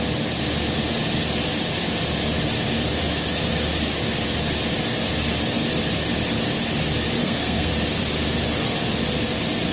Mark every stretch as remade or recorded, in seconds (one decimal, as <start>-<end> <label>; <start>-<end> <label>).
0.0-7.2 recorded; 7.2-7.7 remade; 7.7-9.7 recorded